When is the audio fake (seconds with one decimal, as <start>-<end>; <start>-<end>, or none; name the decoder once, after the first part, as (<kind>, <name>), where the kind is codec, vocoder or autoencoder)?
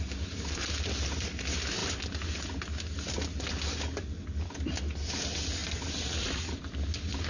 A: none